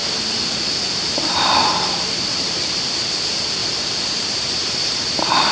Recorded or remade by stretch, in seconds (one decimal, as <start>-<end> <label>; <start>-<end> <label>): 0.0-2.7 remade; 2.7-3.6 recorded; 3.6-5.5 remade